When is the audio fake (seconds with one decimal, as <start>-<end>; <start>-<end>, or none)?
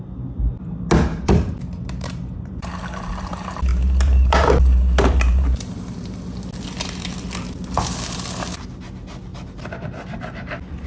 1.1-2.7; 3.7-5.7; 9.3-10.5